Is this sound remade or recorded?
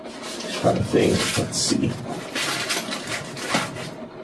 recorded